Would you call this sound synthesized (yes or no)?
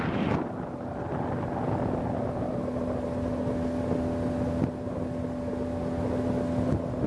no